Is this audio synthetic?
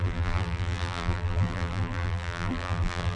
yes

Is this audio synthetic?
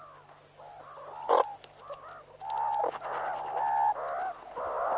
no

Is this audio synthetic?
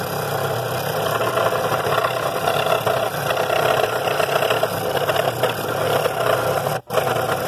no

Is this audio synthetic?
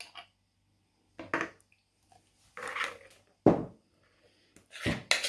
no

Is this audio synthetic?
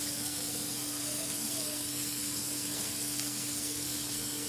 yes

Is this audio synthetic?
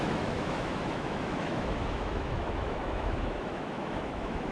yes